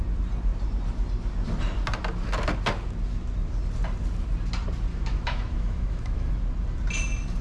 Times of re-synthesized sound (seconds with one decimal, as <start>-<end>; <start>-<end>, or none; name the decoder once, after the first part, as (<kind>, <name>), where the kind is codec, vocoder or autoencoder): 4.9-6.3 (autoencoder, DAC-VAE)